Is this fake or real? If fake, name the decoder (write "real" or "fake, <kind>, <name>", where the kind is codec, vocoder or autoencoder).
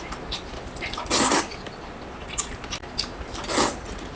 real